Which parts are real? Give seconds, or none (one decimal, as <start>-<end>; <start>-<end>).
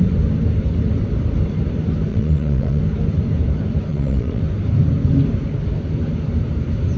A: 0.0-2.1; 2.8-3.9; 4.4-7.0